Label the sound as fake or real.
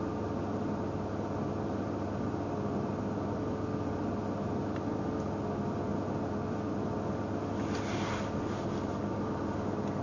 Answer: real